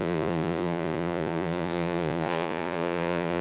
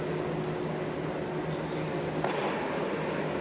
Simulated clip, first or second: first